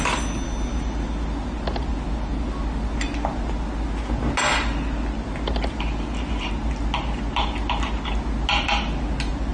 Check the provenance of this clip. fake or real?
real